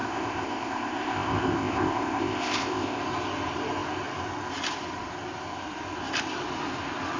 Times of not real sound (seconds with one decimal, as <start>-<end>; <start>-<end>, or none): 0.0-3.0